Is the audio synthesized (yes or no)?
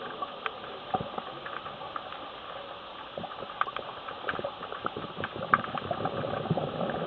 no